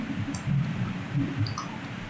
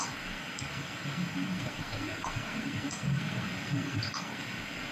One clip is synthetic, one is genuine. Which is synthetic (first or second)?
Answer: second